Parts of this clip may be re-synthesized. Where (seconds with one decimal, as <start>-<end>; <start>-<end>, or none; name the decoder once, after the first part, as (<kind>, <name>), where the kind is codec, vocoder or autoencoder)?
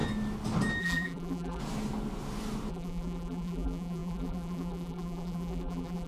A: 0.8-1.6 (vocoder, BigVGAN v2); 2.7-6.1